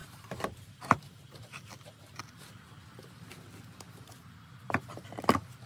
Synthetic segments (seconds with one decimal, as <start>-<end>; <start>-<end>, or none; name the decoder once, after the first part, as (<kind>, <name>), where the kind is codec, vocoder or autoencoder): 0.0-2.2 (vocoder, BigVGAN v2)